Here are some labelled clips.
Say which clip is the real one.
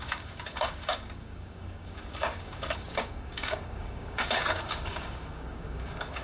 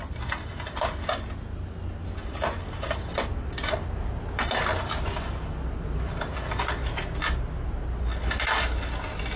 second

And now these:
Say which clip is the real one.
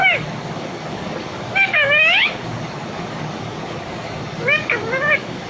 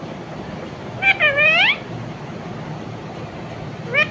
second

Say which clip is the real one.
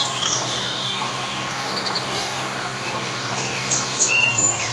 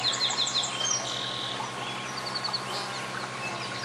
second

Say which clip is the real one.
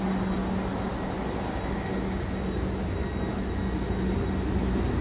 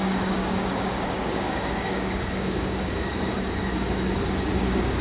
first